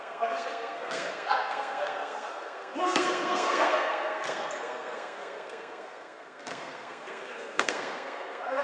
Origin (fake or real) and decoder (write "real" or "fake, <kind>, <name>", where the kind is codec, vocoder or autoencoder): fake, codec, SNAC